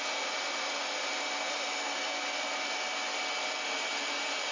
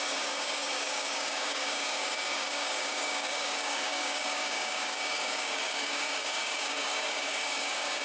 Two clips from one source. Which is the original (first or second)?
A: first